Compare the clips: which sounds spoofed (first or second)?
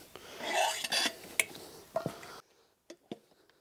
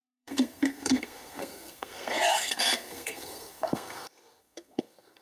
second